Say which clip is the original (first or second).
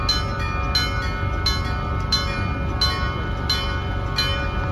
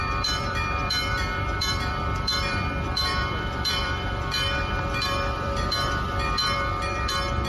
first